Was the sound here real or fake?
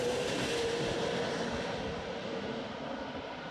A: fake